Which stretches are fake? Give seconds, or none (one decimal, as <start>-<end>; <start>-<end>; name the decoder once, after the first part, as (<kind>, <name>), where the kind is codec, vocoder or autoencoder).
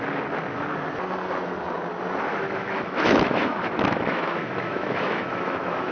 2.3-5.9 (autoencoder, DAC-VAE)